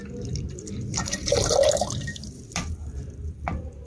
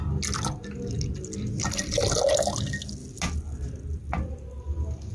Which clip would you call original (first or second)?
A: second